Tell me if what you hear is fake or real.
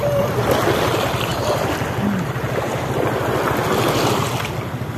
real